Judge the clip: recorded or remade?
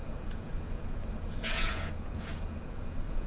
remade